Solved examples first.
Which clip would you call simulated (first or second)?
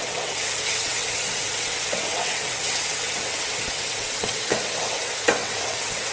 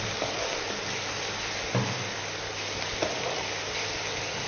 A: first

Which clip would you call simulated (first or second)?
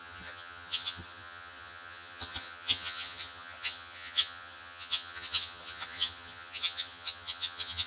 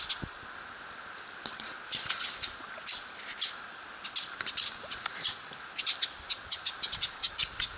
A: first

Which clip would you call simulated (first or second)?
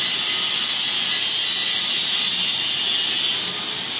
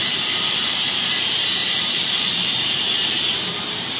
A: second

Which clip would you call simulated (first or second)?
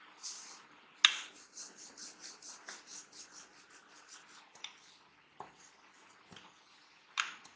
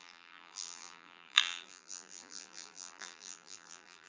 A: second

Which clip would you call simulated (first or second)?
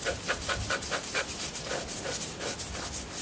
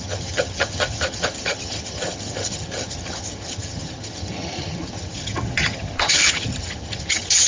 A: second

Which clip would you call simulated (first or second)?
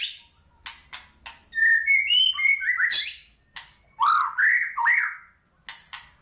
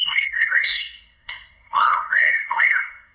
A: second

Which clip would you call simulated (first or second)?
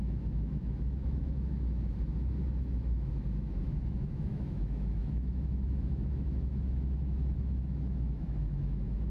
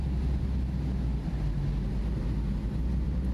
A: first